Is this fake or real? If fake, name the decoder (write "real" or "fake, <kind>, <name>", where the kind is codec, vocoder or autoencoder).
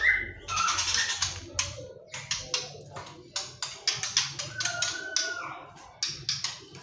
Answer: real